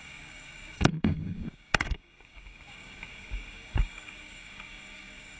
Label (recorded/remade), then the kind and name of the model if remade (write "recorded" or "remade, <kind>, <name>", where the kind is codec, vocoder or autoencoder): remade, codec, DAC